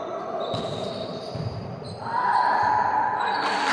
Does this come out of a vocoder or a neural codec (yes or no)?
yes